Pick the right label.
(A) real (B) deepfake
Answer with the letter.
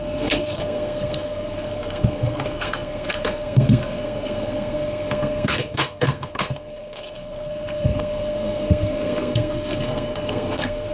B